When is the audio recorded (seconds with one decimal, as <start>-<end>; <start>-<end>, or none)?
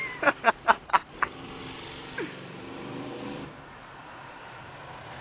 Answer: 1.6-2.0